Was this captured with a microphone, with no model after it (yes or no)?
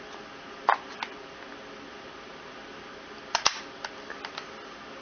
yes